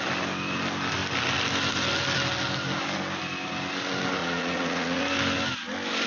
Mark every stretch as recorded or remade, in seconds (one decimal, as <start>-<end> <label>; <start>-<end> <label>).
0.0-4.2 recorded; 4.2-5.0 remade; 5.0-6.1 recorded